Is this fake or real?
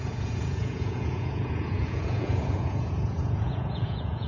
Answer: fake